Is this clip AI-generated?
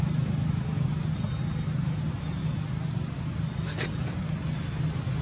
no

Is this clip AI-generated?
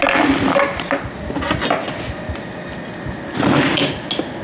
no